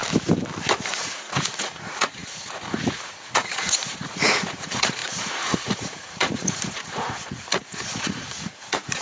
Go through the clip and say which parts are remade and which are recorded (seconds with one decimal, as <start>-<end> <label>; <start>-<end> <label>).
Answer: 0.0-0.9 recorded; 0.9-9.0 remade